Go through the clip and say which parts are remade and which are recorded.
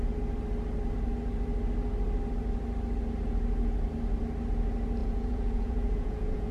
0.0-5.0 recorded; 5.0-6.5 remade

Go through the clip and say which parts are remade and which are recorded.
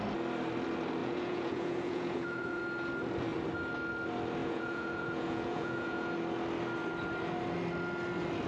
0.0-1.0 recorded; 1.0-2.6 remade; 2.6-4.4 recorded; 4.4-6.1 remade; 6.1-8.5 recorded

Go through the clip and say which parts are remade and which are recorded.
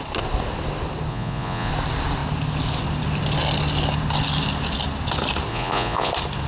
0.0-1.1 recorded; 1.1-1.7 remade; 1.7-5.5 recorded; 5.5-6.1 remade; 6.1-6.5 recorded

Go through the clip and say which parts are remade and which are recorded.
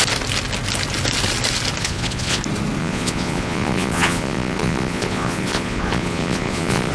0.0-1.8 recorded; 1.8-2.4 remade; 2.4-2.8 recorded; 2.8-6.9 remade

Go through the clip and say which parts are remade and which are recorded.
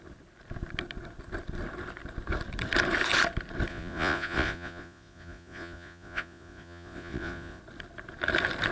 0.0-3.7 recorded; 3.7-7.6 remade; 7.6-8.7 recorded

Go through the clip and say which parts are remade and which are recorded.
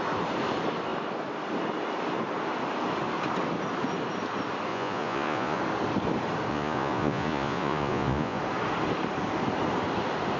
0.0-4.7 recorded; 4.7-5.6 remade; 5.6-6.5 recorded; 6.5-8.4 remade; 8.4-10.4 recorded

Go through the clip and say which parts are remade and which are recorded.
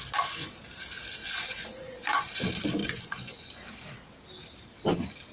0.0-1.2 recorded; 1.2-2.4 remade; 2.4-2.8 recorded; 2.8-3.5 remade; 3.5-5.3 recorded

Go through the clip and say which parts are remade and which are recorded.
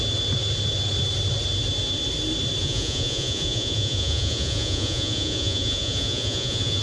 0.0-2.6 recorded; 2.6-6.8 remade